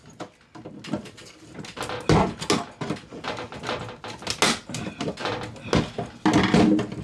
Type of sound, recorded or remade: recorded